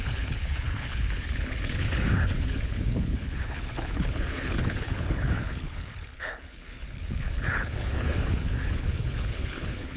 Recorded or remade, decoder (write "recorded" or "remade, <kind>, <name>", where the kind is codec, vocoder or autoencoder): remade, codec, HILCodec